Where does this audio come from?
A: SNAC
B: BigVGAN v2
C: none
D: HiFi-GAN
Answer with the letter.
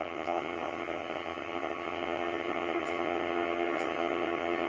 D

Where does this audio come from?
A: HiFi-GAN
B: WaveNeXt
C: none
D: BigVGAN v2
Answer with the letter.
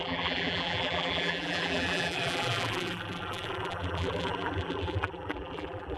D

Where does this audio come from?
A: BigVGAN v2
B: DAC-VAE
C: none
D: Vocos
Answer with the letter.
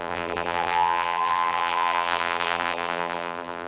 A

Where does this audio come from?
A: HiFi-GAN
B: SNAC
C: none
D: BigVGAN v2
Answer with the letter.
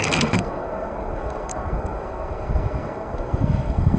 B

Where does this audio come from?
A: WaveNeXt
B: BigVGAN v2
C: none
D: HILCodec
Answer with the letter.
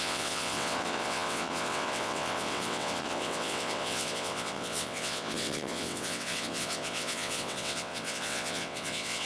A